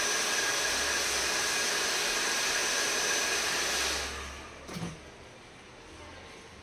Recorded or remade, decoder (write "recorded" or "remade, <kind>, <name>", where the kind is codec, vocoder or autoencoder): recorded